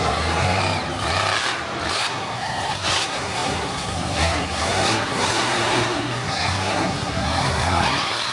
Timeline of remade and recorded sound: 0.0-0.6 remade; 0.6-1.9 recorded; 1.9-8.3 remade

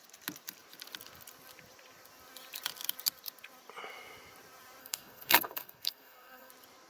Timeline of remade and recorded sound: 0.0-4.8 recorded; 4.8-6.5 remade; 6.5-6.9 recorded

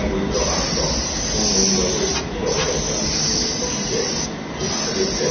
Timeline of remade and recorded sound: 0.0-5.3 recorded

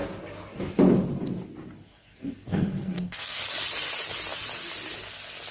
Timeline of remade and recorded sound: 0.0-1.8 recorded; 1.8-3.4 remade; 3.4-5.5 recorded

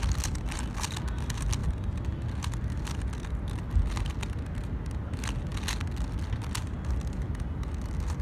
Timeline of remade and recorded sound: 0.0-8.2 recorded

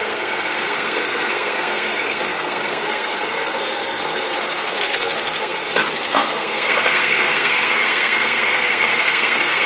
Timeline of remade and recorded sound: 0.0-9.7 remade

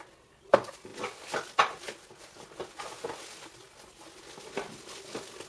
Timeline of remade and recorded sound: 0.0-5.5 recorded

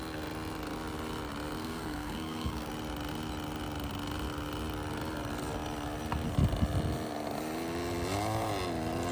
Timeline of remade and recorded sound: 0.0-1.6 recorded; 1.6-2.7 remade; 2.7-9.1 recorded